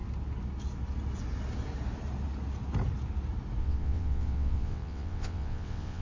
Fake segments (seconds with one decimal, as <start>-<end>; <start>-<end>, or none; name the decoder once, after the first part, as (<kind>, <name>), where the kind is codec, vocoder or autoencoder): 3.6-6.0 (vocoder, WaveNeXt)